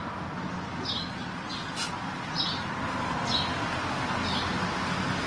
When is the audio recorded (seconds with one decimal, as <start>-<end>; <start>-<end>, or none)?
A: 0.0-5.3